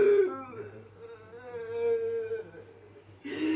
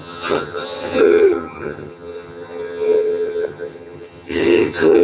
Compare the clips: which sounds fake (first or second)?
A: second